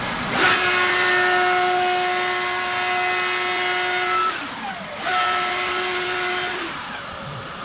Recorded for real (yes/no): yes